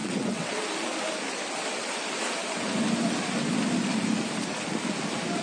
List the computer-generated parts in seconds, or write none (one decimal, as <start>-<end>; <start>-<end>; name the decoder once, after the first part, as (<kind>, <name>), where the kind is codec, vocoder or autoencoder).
0.0-0.5 (vocoder, WaveNeXt)